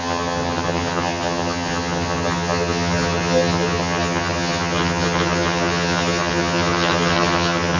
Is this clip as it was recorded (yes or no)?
no